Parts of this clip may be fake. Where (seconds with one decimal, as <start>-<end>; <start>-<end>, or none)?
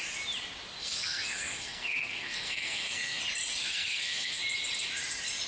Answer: 0.8-3.2; 3.6-4.4